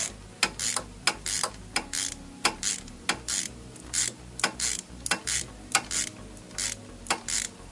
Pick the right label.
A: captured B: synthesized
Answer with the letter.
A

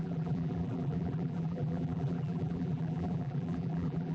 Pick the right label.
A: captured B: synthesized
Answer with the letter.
B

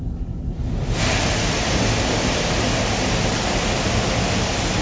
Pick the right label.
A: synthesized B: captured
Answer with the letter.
B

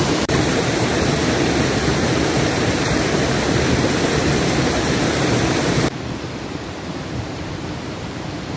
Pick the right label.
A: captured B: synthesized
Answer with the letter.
B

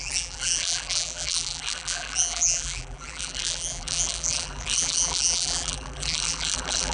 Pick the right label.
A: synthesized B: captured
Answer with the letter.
A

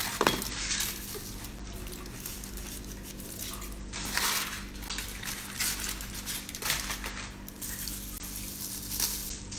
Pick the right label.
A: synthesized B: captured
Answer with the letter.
B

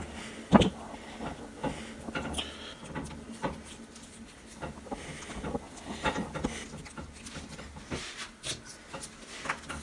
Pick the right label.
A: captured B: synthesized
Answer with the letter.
A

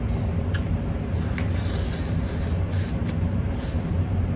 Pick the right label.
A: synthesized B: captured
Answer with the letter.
A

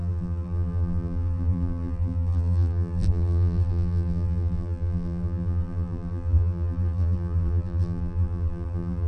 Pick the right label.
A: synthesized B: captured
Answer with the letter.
A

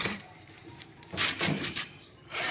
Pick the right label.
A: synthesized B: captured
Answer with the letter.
A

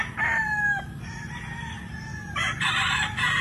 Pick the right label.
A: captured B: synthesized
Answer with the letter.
A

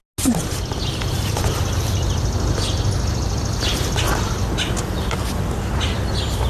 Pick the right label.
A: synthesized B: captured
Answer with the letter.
B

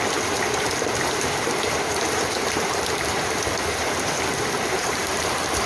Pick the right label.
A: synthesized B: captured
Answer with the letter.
A